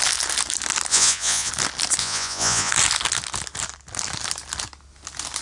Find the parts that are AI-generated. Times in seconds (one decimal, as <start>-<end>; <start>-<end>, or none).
0.9-1.5; 2.0-2.7